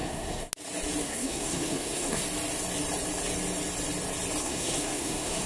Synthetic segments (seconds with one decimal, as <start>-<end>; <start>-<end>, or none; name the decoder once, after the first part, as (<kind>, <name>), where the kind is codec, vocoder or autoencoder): 0.0-0.5 (codec, SNAC); 1.0-2.2; 4.4-5.5